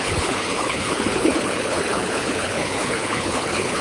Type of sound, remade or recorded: remade